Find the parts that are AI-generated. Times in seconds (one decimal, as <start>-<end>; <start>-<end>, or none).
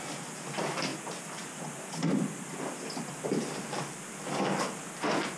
none